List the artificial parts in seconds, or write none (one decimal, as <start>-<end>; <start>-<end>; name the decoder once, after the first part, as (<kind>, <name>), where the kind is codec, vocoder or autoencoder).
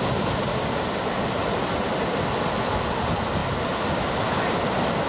none